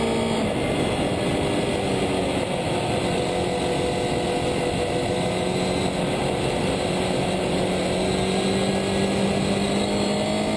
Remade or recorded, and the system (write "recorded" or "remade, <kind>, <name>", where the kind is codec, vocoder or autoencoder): recorded